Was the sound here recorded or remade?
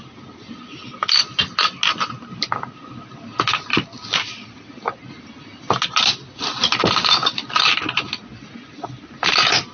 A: recorded